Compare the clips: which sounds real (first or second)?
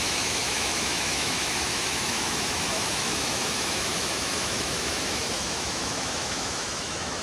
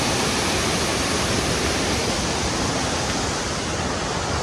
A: second